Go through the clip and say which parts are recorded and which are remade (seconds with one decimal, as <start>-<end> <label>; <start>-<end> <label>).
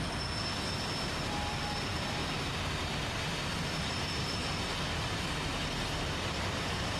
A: 0.0-2.2 remade; 2.2-6.4 recorded; 6.4-7.0 remade